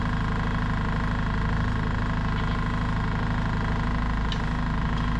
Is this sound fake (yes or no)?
no